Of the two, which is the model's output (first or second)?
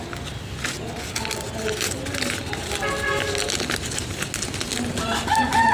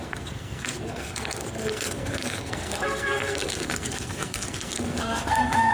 second